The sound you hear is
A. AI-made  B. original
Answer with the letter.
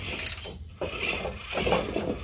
B